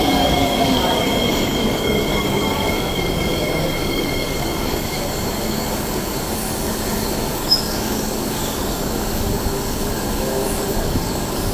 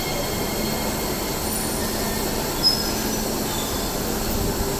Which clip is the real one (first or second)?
second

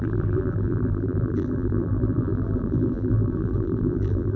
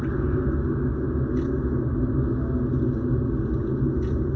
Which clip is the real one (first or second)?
second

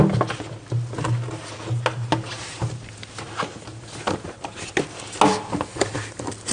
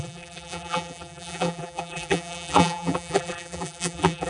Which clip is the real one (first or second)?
first